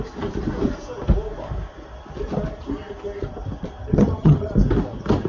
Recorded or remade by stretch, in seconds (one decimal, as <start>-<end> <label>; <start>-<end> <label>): 0.0-3.8 recorded; 3.8-4.5 remade; 4.5-5.3 recorded